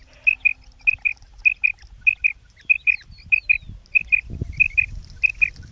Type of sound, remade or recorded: recorded